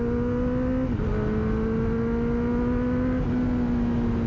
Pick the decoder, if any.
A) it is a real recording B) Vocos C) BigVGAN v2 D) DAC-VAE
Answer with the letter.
A